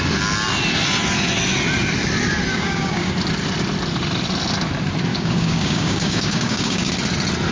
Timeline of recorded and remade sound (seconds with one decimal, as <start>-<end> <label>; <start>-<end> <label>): 0.0-2.5 recorded; 2.5-3.1 remade; 3.1-5.1 recorded; 5.1-6.9 remade; 6.9-7.5 recorded